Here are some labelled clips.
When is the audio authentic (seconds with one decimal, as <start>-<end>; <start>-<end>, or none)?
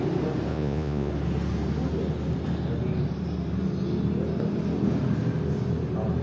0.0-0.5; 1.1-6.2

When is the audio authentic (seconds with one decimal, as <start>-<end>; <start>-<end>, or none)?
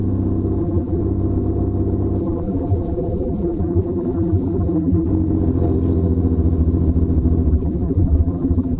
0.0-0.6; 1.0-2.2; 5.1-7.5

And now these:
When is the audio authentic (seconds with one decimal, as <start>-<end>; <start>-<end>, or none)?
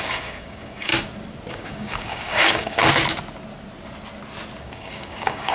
0.9-1.5; 2.8-4.6